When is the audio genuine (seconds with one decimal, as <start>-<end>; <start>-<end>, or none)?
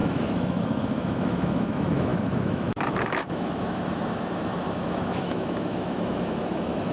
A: none